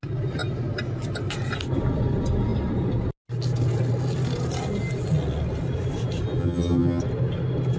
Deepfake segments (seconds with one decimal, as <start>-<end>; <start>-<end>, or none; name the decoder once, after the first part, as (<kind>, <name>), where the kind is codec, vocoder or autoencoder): 6.4-7.0 (vocoder, HiFi-GAN)